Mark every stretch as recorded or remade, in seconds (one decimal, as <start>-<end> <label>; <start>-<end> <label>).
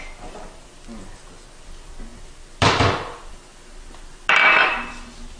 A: 0.0-5.4 recorded